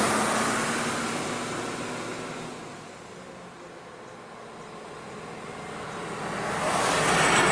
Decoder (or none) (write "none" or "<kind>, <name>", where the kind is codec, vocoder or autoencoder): none